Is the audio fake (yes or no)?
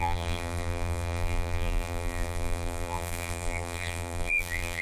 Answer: yes